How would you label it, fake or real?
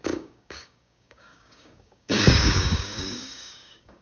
fake